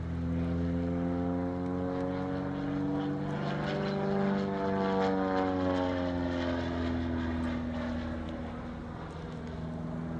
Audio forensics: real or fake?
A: real